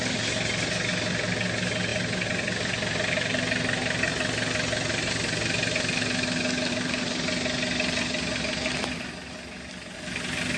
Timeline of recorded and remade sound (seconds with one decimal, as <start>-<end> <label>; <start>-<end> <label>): 0.0-10.6 recorded